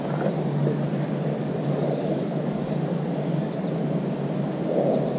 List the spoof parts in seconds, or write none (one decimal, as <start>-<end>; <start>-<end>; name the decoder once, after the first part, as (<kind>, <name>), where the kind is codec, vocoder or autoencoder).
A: 1.4-3.5 (codec, DAC)